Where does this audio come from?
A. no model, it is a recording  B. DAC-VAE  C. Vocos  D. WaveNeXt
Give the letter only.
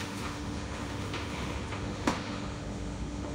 B